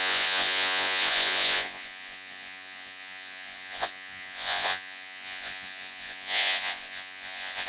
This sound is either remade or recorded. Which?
remade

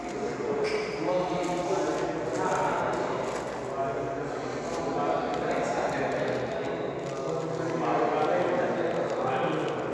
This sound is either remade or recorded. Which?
recorded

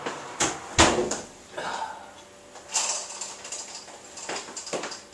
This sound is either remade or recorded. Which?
recorded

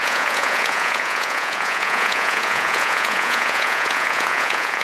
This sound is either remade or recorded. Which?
remade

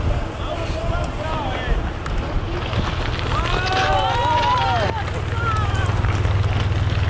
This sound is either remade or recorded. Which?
recorded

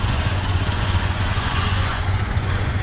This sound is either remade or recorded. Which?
remade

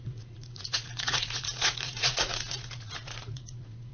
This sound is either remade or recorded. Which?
remade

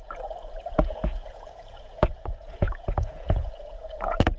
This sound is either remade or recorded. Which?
remade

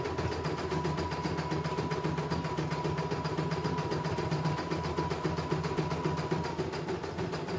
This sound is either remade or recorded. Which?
recorded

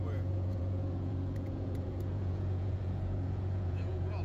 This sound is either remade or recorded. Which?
remade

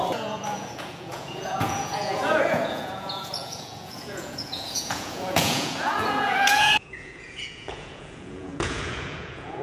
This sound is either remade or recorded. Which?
remade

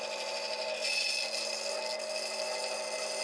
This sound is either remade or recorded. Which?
recorded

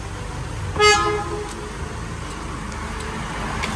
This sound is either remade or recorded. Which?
recorded